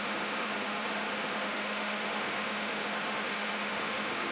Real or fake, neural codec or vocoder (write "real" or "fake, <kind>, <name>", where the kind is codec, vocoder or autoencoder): fake, autoencoder, DAC-VAE